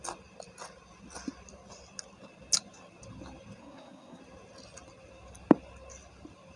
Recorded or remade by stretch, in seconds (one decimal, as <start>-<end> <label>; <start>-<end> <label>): 0.0-3.6 recorded; 3.6-4.2 remade; 4.2-6.6 recorded

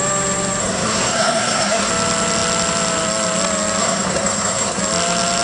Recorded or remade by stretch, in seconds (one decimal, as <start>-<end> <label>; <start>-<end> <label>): 0.0-0.6 recorded; 0.6-1.9 remade; 1.9-3.8 recorded; 3.8-4.8 remade; 4.8-5.4 recorded

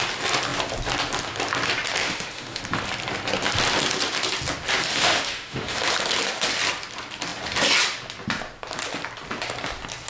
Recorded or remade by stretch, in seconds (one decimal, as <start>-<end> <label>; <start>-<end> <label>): 0.0-2.0 recorded; 2.0-2.6 remade; 2.6-4.9 recorded; 4.9-5.8 remade; 5.8-10.1 recorded

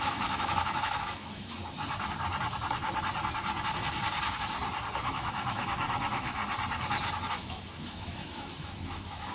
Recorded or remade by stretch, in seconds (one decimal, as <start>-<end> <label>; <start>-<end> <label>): 0.0-1.6 remade; 1.6-5.1 recorded; 5.1-6.4 remade; 6.4-7.1 recorded; 7.1-9.3 remade